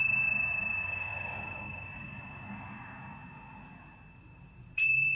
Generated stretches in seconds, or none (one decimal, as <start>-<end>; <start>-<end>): 0.0-1.1; 4.2-5.1